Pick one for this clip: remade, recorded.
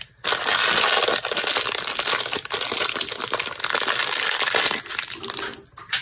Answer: recorded